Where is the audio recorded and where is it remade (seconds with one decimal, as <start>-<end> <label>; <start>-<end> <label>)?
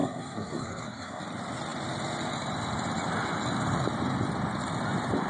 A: 0.0-1.2 remade; 1.2-5.3 recorded